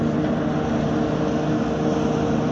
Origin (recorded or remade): recorded